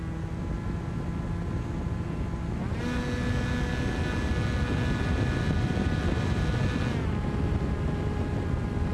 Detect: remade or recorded recorded